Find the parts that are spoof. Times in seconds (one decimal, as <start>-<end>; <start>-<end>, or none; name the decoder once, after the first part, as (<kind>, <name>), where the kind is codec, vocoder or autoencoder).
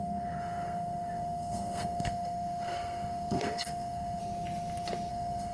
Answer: 0.0-4.2 (codec, SNAC); 5.1-5.5